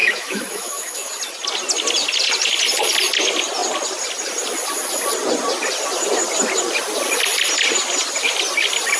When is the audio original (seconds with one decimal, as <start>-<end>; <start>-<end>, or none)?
1.1-9.0